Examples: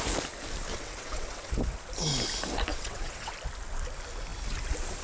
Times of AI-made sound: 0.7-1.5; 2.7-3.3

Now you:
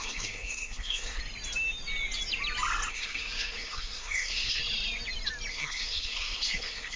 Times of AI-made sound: 0.0-1.2; 2.9-4.6; 5.5-7.0

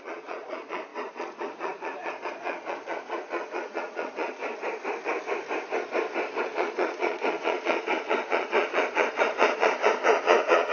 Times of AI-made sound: 0.0-4.4; 6.4-10.7

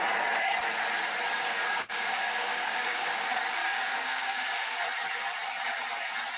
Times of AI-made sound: 1.3-3.2; 3.6-4.8